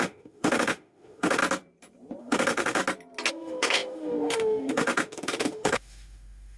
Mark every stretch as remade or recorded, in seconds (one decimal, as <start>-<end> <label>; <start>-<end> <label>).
0.0-1.4 remade; 1.4-2.2 recorded; 2.2-2.8 remade; 2.8-3.3 recorded; 3.3-6.6 remade